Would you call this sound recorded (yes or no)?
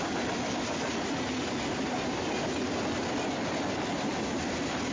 yes